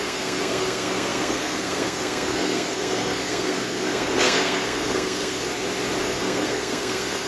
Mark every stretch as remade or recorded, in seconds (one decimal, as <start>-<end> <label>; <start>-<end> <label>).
0.0-5.5 remade; 5.5-6.0 recorded; 6.0-7.3 remade